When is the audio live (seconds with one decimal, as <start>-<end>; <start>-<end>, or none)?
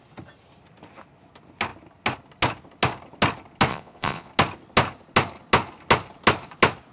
0.0-3.7; 4.3-6.9